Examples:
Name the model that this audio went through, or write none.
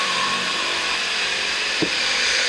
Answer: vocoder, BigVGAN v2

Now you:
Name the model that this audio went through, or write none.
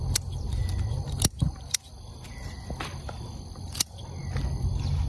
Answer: none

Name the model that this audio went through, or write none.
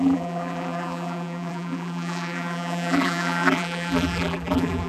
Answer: vocoder, BigVGAN v2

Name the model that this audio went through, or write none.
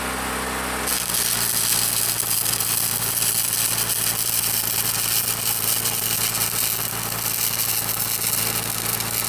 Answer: none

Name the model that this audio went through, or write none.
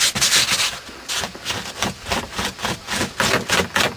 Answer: none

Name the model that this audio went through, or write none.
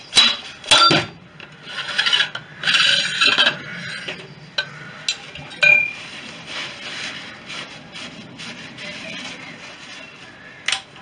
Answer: none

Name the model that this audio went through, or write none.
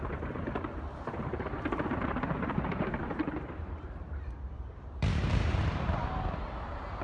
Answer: vocoder, BigVGAN v2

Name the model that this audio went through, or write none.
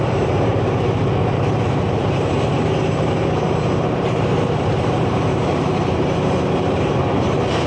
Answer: vocoder, BigVGAN v2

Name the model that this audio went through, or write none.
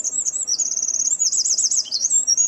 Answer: vocoder, BigVGAN v2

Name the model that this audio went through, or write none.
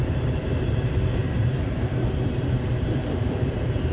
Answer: vocoder, BigVGAN v2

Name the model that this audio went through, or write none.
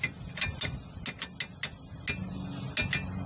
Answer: none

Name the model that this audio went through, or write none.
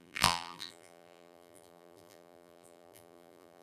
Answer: vocoder, BigVGAN v2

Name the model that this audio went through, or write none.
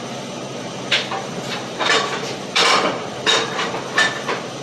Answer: vocoder, BigVGAN v2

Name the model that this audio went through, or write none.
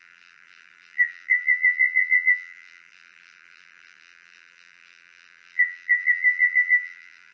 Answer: vocoder, BigVGAN v2